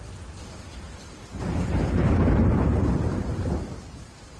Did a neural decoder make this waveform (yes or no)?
no